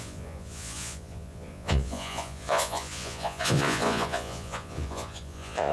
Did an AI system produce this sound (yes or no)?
yes